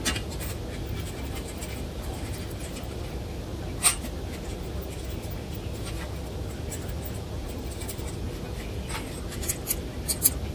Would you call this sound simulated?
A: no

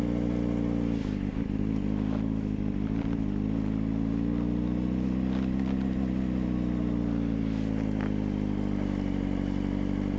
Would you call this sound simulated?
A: no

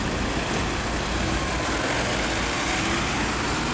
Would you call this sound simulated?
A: no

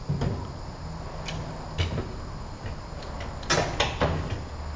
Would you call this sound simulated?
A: no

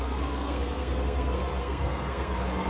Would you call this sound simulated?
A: yes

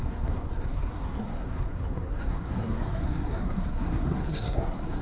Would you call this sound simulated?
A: yes